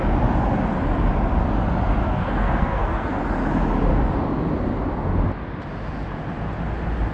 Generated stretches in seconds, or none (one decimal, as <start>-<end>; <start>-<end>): 2.0-3.2